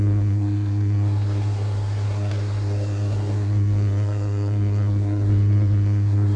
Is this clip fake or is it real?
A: fake